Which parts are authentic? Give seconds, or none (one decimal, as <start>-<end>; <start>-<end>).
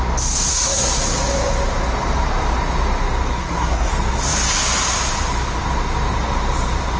0.0-0.5; 1.0-3.4; 3.9-7.0